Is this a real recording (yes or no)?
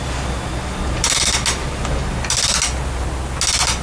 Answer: yes